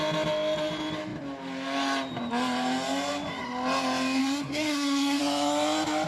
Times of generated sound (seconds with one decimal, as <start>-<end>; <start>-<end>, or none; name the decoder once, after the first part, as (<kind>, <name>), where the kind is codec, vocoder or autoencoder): 4.2-5.2 (codec, SNAC)

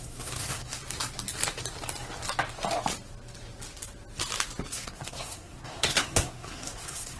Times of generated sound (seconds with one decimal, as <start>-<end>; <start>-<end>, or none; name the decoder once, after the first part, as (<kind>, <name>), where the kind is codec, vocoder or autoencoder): 0.0-0.8 (codec, SNAC); 4.7-7.2

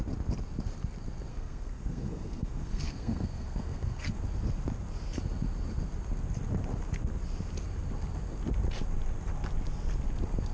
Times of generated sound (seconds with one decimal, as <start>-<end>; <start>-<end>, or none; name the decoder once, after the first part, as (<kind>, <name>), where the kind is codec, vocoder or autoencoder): 1.3-4.2 (codec, SNAC)